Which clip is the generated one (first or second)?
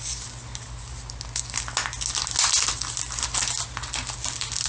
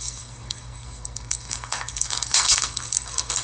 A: second